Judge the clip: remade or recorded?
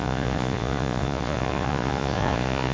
remade